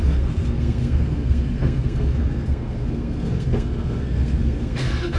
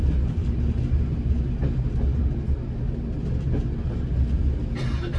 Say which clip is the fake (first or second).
first